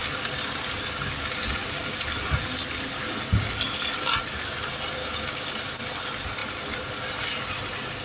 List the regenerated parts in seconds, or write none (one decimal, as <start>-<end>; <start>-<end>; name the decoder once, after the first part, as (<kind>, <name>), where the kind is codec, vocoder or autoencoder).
5.0-5.5 (codec, DAC)